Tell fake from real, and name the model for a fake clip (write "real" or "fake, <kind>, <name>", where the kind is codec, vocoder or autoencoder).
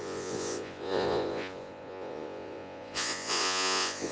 fake, vocoder, Vocos